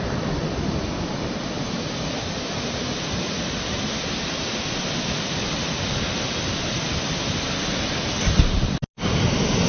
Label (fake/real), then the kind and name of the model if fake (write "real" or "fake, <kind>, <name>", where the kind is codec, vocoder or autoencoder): real